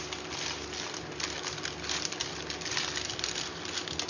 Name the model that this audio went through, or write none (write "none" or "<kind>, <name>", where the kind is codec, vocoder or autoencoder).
none